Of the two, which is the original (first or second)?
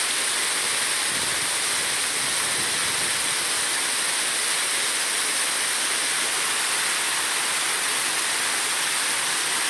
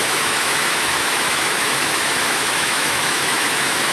first